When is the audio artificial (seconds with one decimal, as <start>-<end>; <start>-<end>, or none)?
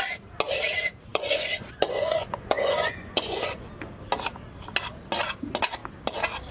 1.1-3.6